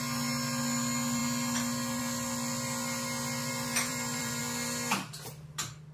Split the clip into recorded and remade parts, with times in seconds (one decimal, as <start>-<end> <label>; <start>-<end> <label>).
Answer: 0.0-3.5 recorded; 3.5-4.4 remade; 4.4-5.9 recorded